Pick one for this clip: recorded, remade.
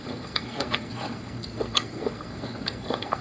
remade